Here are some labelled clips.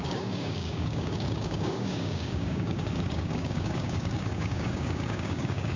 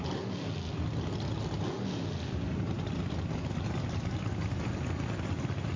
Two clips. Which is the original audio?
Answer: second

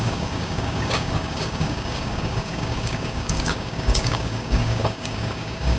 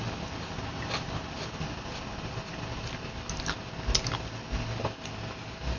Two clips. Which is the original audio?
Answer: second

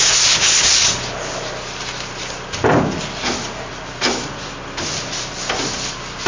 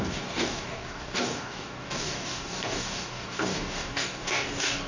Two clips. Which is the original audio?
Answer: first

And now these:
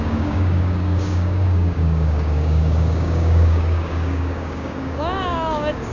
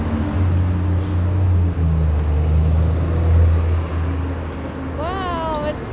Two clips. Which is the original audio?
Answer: second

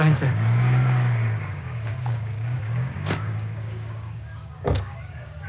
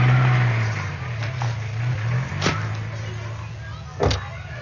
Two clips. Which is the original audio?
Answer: second